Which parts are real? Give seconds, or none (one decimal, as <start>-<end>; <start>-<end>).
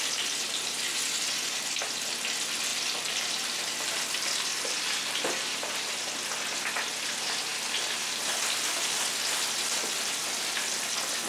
0.0-2.7; 6.0-11.3